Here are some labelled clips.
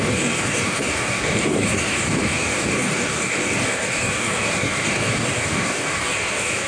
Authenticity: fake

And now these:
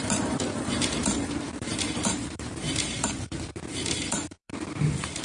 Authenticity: fake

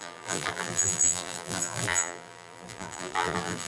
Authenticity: fake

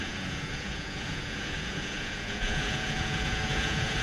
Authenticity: fake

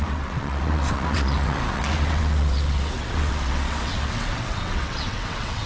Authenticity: fake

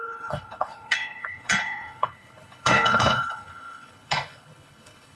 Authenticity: fake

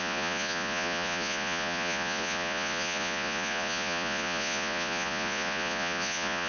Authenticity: fake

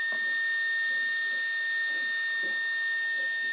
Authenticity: real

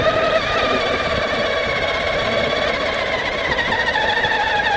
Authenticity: real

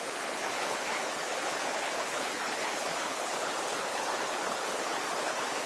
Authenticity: fake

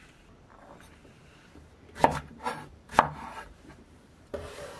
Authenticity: fake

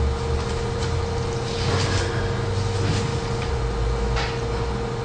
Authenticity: real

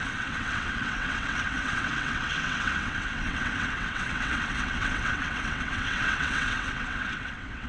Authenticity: fake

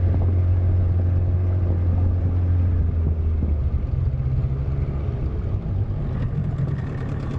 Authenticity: real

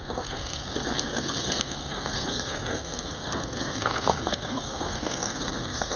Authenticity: fake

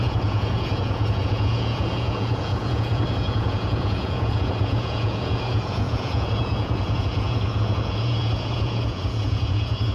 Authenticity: fake